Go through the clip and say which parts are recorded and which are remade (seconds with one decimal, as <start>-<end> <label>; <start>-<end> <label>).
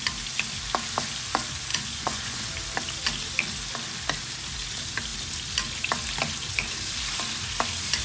0.0-1.7 recorded; 1.7-2.4 remade; 2.4-8.0 recorded